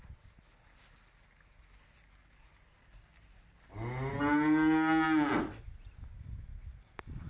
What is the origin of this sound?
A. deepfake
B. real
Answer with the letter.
B